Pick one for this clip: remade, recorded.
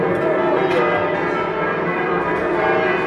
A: remade